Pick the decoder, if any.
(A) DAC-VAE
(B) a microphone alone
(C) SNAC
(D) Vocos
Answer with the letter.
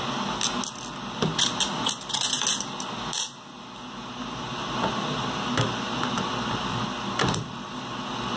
B